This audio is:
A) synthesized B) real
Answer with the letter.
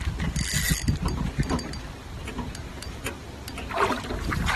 B